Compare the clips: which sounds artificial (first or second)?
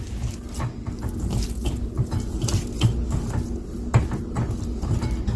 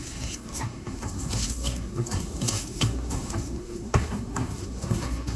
second